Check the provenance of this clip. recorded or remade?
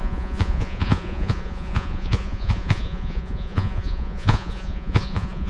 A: remade